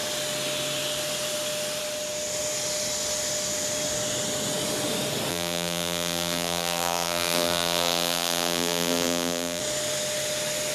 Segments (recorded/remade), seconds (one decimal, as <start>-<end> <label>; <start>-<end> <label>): 0.0-5.3 recorded; 5.3-9.6 remade; 9.6-10.7 recorded